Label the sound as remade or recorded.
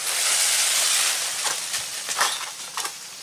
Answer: recorded